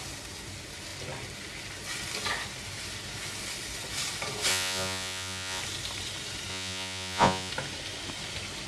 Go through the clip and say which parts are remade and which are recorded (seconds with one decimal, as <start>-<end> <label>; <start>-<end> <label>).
0.0-4.5 recorded; 4.5-5.6 remade; 5.6-6.5 recorded; 6.5-7.5 remade; 7.5-8.7 recorded